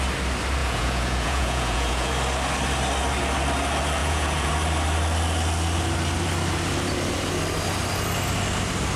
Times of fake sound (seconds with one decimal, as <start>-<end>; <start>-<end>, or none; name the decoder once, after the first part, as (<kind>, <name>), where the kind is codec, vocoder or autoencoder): 0.6-2.1 (vocoder, Vocos); 4.0-4.5